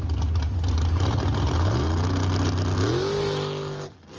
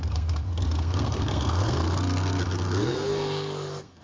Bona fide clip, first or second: first